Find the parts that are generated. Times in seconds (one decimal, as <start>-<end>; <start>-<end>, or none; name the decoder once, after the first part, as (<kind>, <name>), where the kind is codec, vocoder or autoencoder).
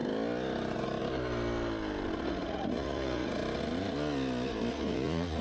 2.2-3.4 (vocoder, Vocos); 4.7-5.4